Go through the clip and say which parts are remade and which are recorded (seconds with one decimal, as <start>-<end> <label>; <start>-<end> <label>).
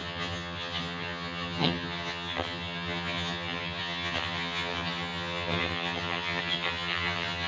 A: 0.0-7.5 remade